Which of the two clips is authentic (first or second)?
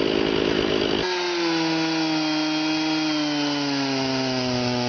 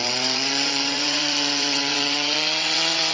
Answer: first